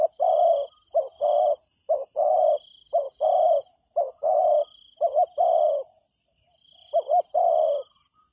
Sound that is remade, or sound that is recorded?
remade